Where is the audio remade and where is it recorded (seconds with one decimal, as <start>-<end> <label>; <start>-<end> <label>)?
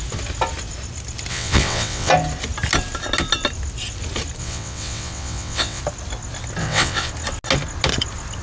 0.0-1.3 recorded; 1.3-2.1 remade; 2.1-4.4 recorded; 4.4-5.8 remade; 5.8-6.6 recorded; 6.6-7.1 remade; 7.1-8.4 recorded